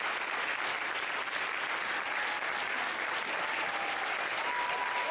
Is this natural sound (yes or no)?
yes